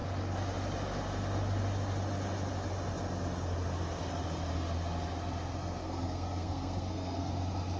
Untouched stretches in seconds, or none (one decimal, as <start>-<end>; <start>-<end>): 0.0-5.8; 7.3-7.8